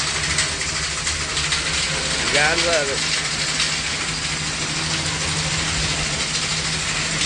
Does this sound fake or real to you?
real